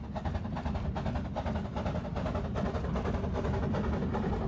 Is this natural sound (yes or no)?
yes